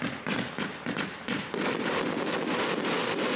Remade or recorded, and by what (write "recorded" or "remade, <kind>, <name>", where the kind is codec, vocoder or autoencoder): recorded